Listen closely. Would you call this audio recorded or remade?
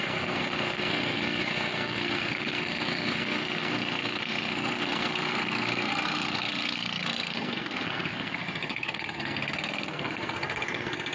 remade